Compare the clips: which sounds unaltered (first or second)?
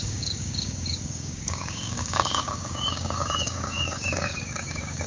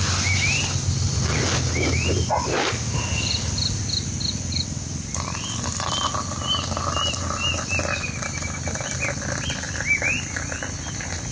second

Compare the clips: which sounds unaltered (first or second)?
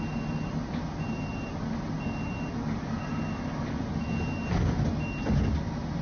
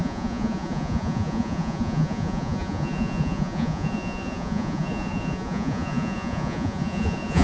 first